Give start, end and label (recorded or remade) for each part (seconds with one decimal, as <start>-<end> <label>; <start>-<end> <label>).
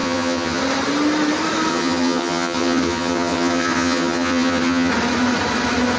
0.0-0.6 remade; 0.6-1.7 recorded; 1.7-4.9 remade; 4.9-6.0 recorded